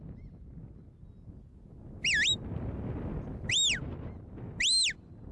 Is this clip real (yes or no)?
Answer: yes